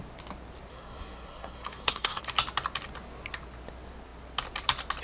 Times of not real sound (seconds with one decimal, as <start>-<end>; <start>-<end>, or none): 0.7-2.2